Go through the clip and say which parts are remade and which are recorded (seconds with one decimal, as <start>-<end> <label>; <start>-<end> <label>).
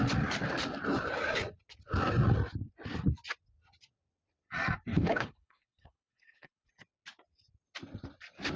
0.0-4.9 recorded; 4.9-6.7 remade; 6.7-8.6 recorded